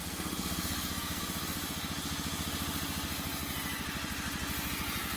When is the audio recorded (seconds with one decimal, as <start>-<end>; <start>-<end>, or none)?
1.2-5.2